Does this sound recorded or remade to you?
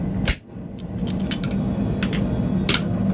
recorded